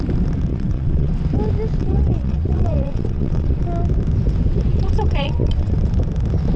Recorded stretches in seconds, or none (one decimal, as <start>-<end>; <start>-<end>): 0.0-0.5; 1.1-1.8; 3.6-4.7; 5.7-6.6